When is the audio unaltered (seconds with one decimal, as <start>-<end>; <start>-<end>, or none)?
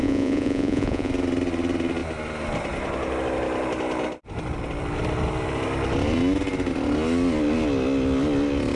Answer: 1.1-8.8